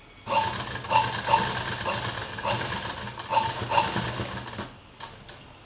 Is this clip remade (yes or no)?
no